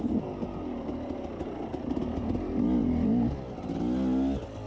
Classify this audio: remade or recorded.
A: recorded